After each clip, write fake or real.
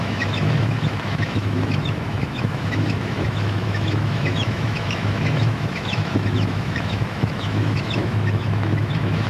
fake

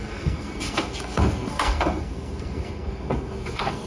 fake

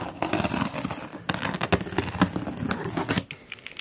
real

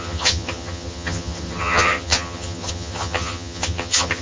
fake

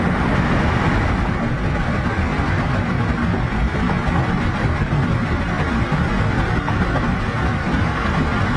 real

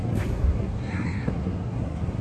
fake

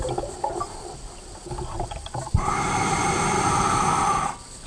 real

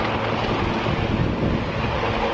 real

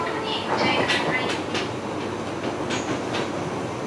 real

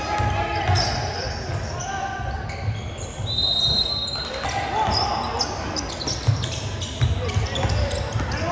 real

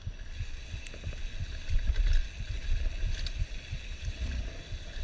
real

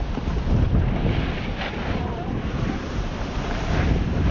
real